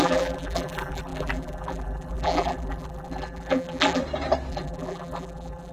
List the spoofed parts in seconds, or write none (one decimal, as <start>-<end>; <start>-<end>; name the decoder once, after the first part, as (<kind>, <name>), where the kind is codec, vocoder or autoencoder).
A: 0.0-4.0 (vocoder, BigVGAN v2); 4.5-5.7